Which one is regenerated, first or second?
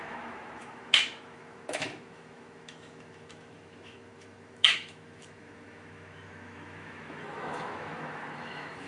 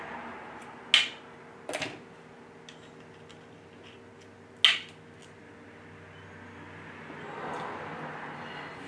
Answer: first